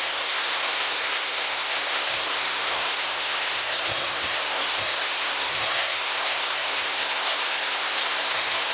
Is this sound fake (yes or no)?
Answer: yes